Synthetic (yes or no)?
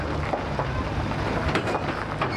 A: no